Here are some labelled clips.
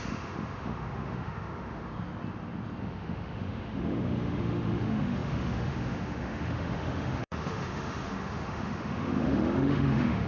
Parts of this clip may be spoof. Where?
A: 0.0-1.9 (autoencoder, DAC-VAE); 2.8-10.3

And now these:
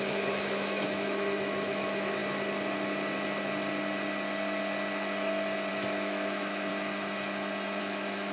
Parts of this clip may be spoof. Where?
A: 0.0-2.2 (autoencoder, DAC-VAE); 5.7-6.7; 7.8-8.3

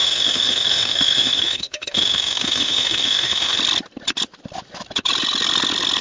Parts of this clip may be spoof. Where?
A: 0.0-3.6 (autoencoder, DAC-VAE)

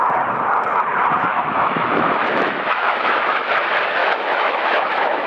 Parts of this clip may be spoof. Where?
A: 1.3-3.5 (autoencoder, DAC-VAE); 4.0-5.3

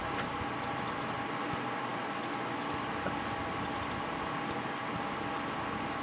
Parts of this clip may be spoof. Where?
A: none

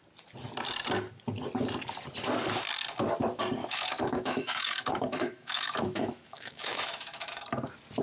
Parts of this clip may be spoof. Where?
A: 3.6-7.4 (autoencoder, DAC-VAE)